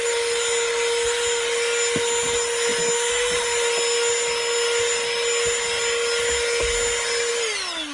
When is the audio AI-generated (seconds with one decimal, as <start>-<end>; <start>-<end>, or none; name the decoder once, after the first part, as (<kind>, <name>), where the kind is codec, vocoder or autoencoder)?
none